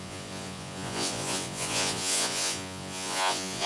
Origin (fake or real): fake